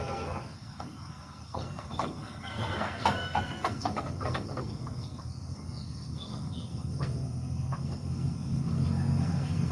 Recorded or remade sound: remade